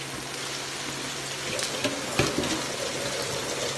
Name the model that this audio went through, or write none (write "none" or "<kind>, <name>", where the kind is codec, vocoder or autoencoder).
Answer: none